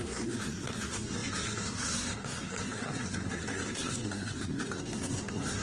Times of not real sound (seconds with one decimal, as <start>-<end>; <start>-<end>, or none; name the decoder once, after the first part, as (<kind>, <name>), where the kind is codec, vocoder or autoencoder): 0.0-5.6 (codec, SNAC)